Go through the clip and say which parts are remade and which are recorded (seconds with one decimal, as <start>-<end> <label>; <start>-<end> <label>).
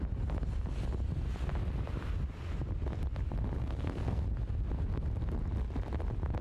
0.0-3.6 recorded; 3.6-4.2 remade; 4.2-6.4 recorded